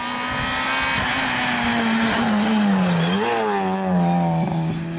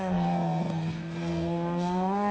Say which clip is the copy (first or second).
second